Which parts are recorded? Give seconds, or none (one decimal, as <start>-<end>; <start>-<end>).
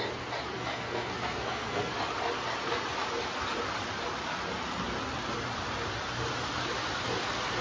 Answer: 0.0-0.5; 1.9-7.6